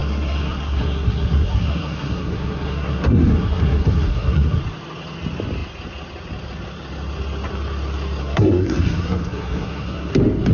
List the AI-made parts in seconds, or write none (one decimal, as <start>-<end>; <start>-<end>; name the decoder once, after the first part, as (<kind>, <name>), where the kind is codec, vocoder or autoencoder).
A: 0.0-4.6 (codec, SNAC); 8.2-10.1